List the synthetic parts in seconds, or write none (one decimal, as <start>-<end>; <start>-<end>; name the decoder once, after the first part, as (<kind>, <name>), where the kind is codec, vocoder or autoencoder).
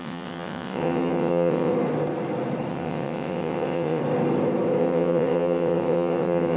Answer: 0.0-1.7 (vocoder, WaveNeXt); 2.7-4.0; 4.8-6.6